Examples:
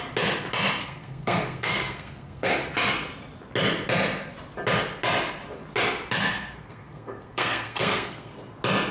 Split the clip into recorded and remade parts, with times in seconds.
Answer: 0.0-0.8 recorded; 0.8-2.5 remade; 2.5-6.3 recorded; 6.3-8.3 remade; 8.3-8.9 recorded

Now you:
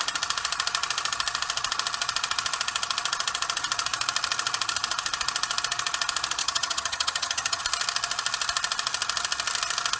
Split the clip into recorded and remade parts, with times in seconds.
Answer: 0.0-6.4 recorded; 6.4-7.6 remade; 7.6-10.0 recorded

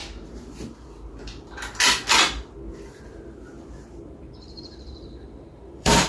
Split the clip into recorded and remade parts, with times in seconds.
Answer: 0.0-3.0 recorded; 3.0-6.1 remade

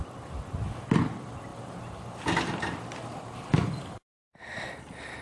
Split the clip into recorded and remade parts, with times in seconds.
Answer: 0.0-5.2 recorded

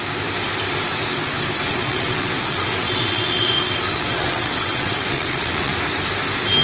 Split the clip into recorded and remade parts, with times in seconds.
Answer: 0.0-1.7 recorded; 1.7-5.7 remade; 5.7-6.6 recorded

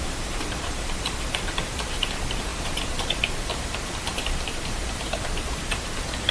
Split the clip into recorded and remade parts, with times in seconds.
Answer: 0.0-6.3 remade